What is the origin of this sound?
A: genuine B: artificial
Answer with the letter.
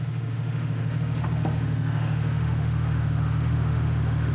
B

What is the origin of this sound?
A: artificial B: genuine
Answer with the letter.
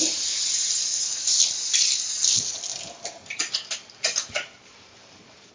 B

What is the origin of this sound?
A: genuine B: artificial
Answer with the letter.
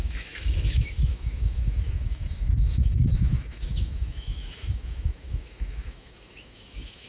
B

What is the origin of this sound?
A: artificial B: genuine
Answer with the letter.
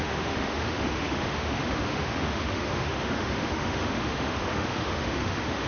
A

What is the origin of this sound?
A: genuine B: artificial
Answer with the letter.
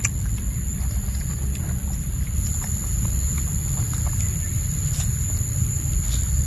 A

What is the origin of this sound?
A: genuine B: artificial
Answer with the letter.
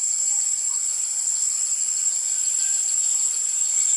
A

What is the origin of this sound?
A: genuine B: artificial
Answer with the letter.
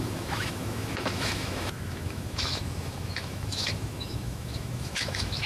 B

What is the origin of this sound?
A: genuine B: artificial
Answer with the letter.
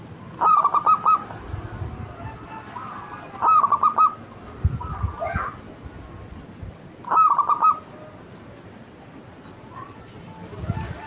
A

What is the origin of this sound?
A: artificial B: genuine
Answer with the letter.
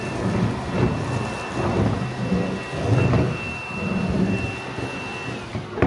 B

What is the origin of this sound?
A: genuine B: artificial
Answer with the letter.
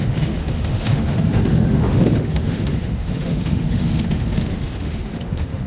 B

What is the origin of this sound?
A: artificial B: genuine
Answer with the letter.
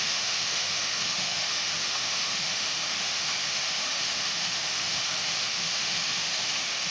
A